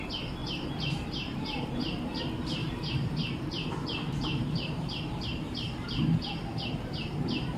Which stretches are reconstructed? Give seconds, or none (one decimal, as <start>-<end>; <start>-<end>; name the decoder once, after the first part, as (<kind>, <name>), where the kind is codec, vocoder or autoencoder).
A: 0.4-2.2 (vocoder, BigVGAN v2); 2.6-5.2